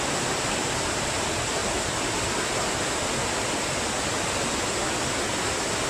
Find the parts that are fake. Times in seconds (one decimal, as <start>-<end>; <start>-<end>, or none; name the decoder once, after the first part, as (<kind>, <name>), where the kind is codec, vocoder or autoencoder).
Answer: none